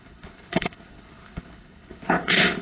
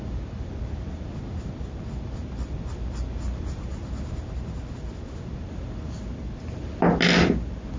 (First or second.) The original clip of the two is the second